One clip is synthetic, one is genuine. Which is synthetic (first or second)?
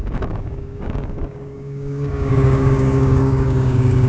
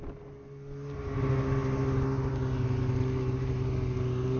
first